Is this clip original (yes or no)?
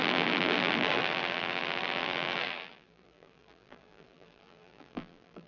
no